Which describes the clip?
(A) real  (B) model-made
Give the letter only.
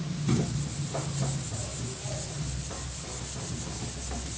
A